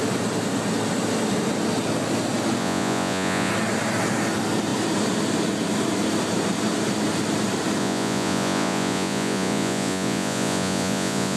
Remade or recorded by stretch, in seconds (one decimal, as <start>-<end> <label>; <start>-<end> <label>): 0.0-2.6 recorded; 2.6-3.5 remade; 3.5-7.8 recorded; 7.8-11.4 remade